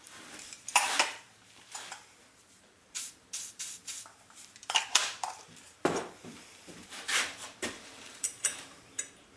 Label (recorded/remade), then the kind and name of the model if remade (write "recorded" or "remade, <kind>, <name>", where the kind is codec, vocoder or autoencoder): remade, vocoder, BigVGAN v2